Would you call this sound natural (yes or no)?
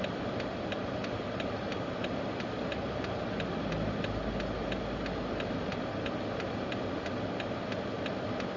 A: yes